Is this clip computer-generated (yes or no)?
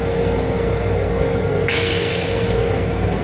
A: yes